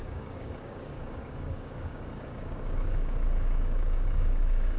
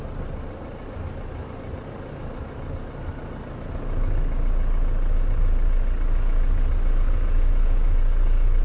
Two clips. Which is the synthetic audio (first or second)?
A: first